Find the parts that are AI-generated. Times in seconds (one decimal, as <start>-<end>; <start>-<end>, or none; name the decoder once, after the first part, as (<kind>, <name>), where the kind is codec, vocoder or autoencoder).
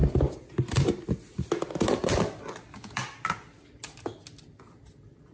none